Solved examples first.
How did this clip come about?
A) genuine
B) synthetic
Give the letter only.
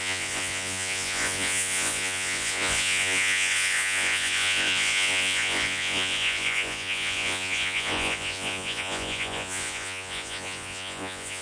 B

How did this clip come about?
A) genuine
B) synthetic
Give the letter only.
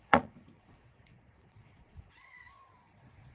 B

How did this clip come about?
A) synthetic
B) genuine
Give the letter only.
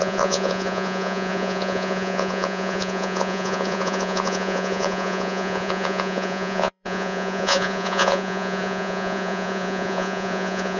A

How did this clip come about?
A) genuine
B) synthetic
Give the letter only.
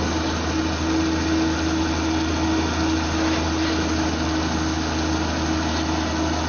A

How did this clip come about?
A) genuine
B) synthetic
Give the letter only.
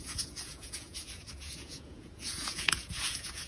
B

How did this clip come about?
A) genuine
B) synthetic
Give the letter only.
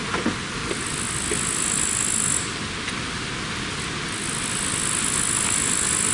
A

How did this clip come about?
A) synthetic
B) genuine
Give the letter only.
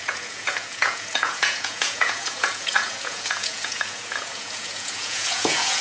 A